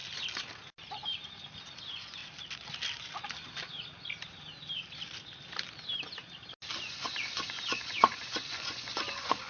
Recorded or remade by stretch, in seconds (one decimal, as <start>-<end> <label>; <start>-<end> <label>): 0.0-1.8 recorded; 1.8-2.2 remade; 2.2-6.9 recorded; 6.9-9.5 remade